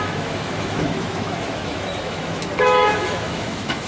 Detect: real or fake fake